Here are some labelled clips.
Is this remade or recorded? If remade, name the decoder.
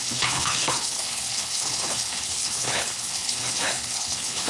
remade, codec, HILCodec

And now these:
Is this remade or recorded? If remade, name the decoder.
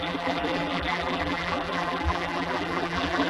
remade, vocoder, BigVGAN v2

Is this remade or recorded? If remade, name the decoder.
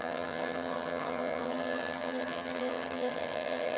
remade, vocoder, HiFi-GAN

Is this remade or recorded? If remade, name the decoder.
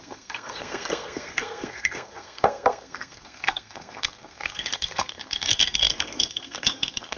remade, codec, SNAC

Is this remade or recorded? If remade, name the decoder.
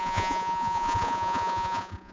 remade, vocoder, Vocos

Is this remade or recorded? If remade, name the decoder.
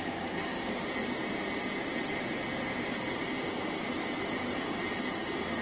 remade, vocoder, BigVGAN v2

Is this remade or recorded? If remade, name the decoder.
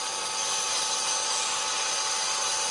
recorded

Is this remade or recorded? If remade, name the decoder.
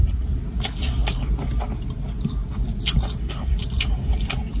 recorded